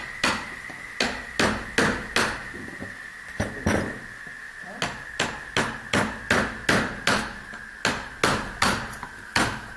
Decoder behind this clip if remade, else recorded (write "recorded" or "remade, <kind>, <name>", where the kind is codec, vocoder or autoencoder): recorded